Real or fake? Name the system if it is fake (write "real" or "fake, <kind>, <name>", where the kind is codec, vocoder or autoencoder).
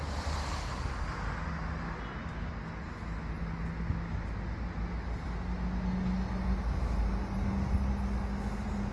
real